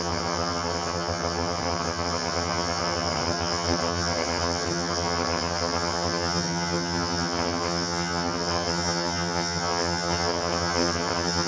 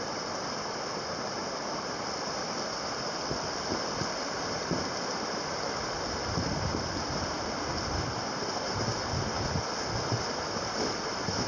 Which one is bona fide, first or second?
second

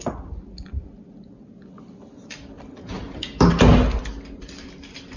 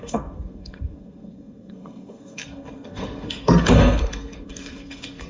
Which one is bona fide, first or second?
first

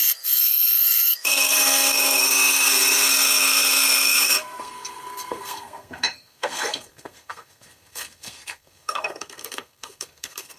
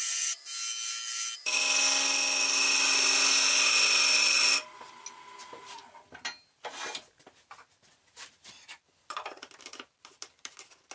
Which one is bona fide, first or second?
second